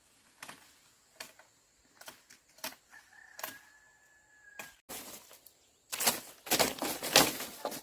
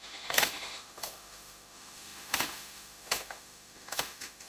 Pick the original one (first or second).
first